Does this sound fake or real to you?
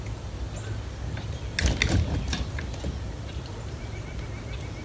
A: real